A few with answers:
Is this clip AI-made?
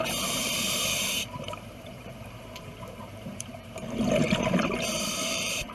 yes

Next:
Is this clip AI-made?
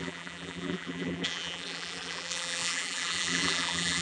yes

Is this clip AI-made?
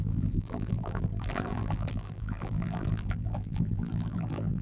yes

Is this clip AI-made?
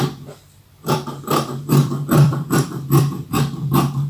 yes